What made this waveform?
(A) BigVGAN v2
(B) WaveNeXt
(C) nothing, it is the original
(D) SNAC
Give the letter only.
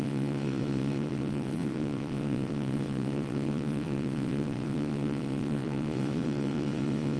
B